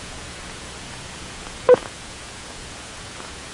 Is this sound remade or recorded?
remade